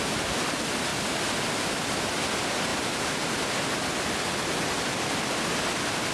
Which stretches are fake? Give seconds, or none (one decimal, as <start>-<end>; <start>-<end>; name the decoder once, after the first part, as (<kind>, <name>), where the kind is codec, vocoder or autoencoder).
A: 0.9-1.5 (vocoder, BigVGAN v2)